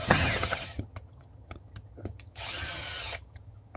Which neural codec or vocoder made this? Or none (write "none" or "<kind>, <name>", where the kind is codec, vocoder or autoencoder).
vocoder, HiFi-GAN